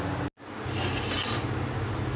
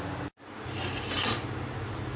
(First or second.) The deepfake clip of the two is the second